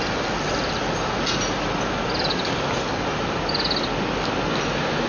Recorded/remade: recorded